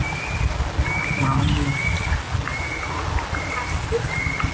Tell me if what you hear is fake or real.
real